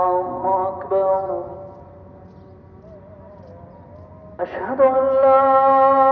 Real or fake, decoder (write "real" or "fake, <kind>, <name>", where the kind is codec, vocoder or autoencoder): real